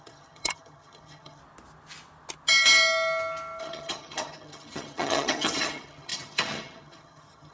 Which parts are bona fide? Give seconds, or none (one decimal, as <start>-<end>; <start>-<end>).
1.4-3.6